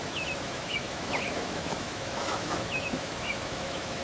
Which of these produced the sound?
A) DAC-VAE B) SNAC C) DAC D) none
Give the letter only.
A